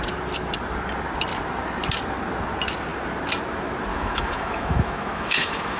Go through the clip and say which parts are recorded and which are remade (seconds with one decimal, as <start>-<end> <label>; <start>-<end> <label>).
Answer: 0.0-3.9 recorded; 3.9-5.8 remade